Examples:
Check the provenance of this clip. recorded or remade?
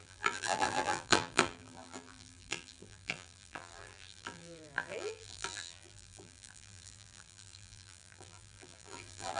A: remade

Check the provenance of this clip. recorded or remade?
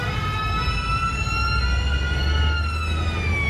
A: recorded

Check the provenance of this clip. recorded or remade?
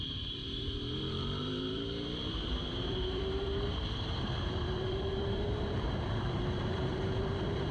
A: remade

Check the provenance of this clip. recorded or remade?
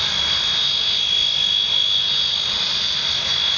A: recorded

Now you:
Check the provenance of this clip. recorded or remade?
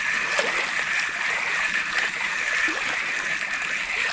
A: recorded